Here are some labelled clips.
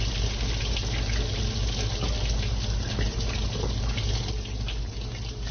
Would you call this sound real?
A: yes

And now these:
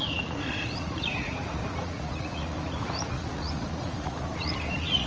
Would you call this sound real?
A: no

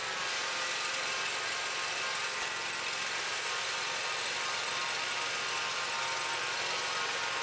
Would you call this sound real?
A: yes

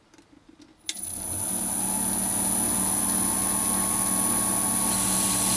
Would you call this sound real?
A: yes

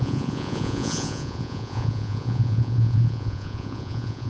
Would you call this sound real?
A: no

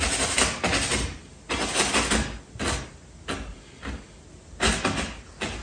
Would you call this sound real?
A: yes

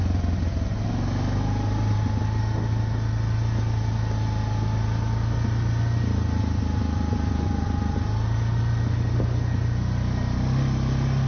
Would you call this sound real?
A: yes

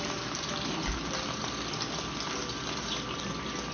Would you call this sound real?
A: yes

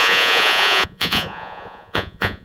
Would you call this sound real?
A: no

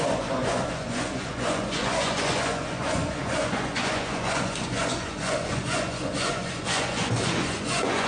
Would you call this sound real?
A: no